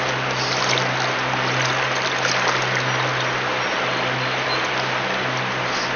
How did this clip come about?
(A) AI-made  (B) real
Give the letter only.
B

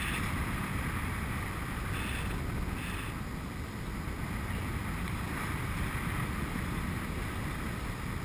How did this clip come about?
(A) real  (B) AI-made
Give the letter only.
A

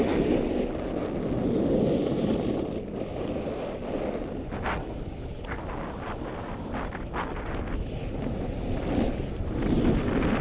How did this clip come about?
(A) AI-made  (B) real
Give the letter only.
B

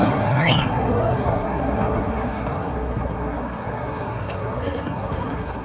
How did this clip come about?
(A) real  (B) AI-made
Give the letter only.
B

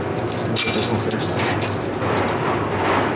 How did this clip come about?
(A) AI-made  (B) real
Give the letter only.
B